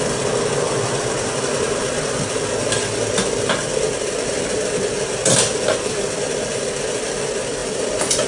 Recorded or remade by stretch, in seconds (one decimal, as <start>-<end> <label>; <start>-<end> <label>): 0.0-8.3 recorded